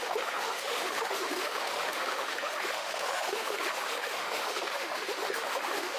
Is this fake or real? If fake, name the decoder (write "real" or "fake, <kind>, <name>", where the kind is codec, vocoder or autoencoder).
fake, autoencoder, DAC-VAE